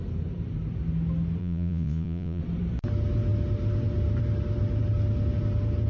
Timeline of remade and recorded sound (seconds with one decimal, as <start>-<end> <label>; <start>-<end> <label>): 0.0-1.4 recorded; 1.4-2.4 remade; 2.4-5.9 recorded